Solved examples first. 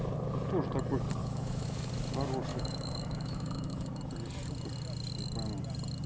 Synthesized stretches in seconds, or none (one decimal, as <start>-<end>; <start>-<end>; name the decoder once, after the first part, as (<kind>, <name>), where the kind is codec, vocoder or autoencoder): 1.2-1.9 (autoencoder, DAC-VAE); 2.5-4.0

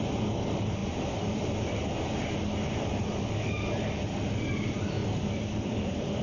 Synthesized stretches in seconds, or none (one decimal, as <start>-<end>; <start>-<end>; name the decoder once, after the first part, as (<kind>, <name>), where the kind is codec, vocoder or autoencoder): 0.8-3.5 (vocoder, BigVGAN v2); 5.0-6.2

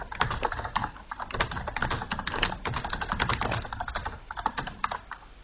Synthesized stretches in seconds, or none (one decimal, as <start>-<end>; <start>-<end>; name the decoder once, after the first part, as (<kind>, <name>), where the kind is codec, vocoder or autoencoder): 0.0-1.8 (vocoder, BigVGAN v2); 2.5-5.4

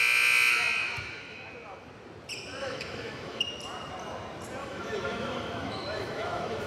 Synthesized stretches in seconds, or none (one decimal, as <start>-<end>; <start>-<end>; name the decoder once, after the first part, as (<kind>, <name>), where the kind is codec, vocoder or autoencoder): 0.8-1.5 (autoencoder, DAC-VAE); 2.6-3.4; 4.6-6.7

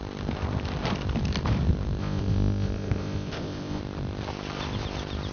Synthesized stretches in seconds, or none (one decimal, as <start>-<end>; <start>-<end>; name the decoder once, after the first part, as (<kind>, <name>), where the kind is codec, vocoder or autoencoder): 2.0-3.8 (codec, ZipCodec)

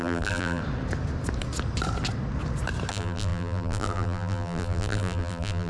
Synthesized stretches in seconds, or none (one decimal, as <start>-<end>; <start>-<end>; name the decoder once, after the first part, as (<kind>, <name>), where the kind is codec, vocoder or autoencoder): 0.0-0.6 (vocoder, BigVGAN v2); 2.9-5.7

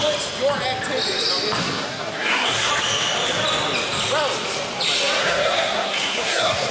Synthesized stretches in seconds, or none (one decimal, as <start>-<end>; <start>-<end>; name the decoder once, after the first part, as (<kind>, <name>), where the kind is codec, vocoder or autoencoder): 1.6-2.7 (codec, SNAC); 5.2-6.7